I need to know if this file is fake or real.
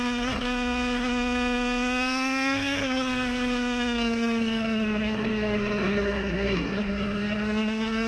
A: fake